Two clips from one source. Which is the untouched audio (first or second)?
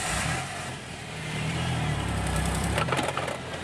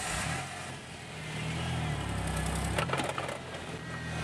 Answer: second